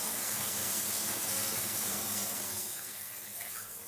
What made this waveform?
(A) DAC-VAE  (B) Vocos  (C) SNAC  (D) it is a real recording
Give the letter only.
C